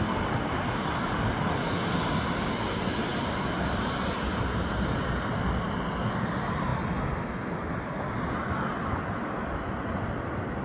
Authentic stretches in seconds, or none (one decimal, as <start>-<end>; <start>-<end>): 0.0-10.6